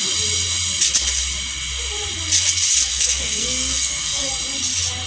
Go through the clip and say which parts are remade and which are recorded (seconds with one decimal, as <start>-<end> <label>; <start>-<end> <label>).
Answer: 0.0-2.9 recorded; 2.9-4.3 remade; 4.3-5.1 recorded